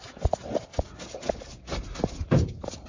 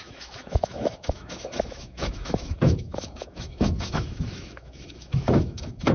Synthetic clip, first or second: second